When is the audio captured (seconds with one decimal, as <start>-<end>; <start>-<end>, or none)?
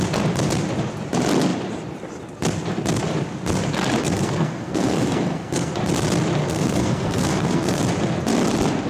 0.0-4.0; 5.7-6.4; 7.8-8.9